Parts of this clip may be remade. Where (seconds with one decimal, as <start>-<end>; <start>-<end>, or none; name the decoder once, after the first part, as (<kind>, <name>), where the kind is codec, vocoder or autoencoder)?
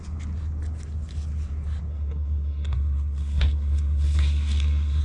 1.9-5.0 (codec, SNAC)